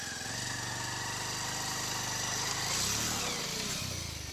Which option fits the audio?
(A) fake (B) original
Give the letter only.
B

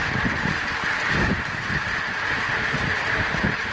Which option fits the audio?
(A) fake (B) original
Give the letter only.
A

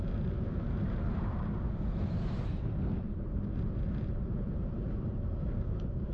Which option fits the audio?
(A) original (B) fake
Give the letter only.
B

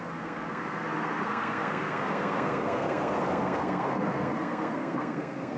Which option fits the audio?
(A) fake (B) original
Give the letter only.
A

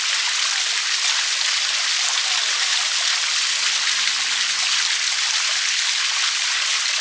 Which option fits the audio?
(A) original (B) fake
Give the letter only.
A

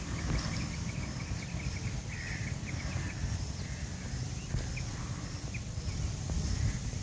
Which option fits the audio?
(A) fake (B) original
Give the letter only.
B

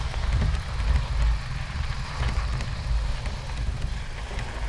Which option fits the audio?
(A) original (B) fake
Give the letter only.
A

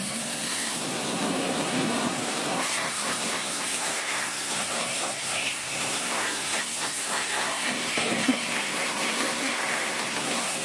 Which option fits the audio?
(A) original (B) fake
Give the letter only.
B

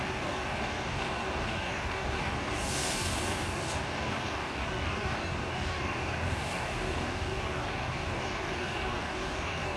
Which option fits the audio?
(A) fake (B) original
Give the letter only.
A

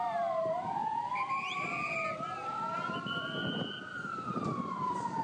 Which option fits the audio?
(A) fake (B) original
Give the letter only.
A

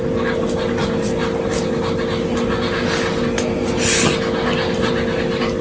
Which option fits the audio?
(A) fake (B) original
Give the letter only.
B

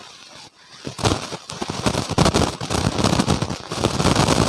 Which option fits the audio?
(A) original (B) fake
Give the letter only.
A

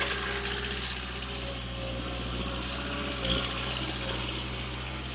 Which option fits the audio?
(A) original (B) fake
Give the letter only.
A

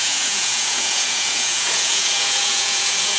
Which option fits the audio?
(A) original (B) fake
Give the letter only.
B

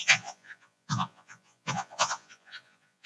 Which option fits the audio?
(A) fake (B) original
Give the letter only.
A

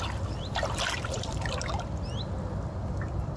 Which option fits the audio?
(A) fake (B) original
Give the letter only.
B